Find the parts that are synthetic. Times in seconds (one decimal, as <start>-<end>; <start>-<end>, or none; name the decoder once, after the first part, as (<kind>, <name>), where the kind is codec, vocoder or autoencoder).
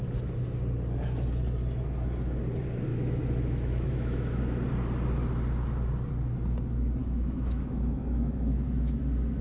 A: 2.9-4.4 (autoencoder, DAC-VAE); 7.0-9.0